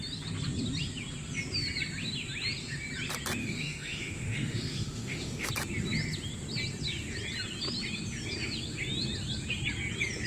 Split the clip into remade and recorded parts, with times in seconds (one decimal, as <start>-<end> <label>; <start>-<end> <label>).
0.0-3.4 recorded; 3.4-5.5 remade; 5.5-10.3 recorded